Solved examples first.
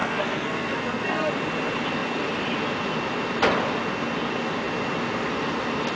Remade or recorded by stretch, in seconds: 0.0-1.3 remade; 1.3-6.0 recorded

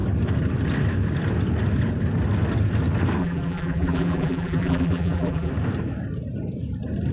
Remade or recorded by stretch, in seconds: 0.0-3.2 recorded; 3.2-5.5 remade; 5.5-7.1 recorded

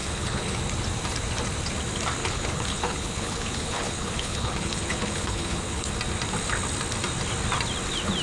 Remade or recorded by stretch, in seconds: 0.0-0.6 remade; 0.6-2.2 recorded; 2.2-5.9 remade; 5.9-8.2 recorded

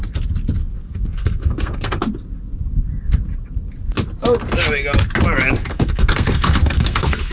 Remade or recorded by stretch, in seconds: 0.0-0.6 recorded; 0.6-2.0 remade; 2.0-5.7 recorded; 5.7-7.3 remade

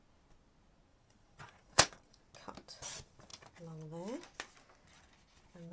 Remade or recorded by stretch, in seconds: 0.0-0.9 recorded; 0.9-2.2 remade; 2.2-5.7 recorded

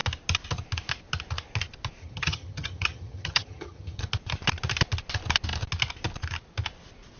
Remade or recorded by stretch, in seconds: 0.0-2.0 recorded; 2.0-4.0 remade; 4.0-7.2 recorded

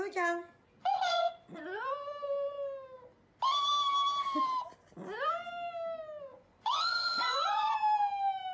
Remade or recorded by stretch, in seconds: 0.0-0.8 recorded; 0.8-1.8 remade; 1.8-6.3 recorded; 6.3-7.8 remade; 7.8-8.5 recorded

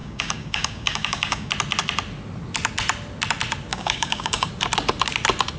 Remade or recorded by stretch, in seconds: 0.0-1.5 remade; 1.5-3.7 recorded; 3.7-4.5 remade; 4.5-5.6 recorded